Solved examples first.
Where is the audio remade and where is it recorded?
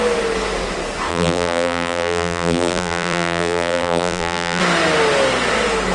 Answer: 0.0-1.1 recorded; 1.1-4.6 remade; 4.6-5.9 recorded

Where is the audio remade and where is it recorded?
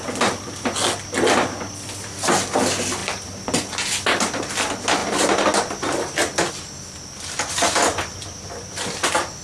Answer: 0.0-9.4 recorded